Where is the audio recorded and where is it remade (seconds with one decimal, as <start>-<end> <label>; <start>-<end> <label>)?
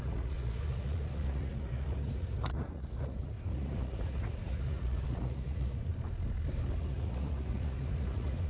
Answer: 0.0-5.9 remade; 5.9-6.8 recorded; 6.8-8.5 remade